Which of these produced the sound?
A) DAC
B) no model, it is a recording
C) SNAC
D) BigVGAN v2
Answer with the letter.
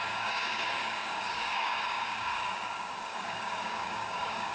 A